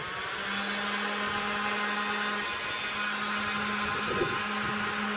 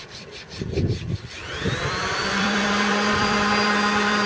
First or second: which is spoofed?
second